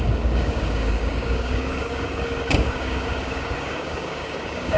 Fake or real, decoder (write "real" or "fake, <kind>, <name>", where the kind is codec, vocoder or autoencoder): fake, codec, DAC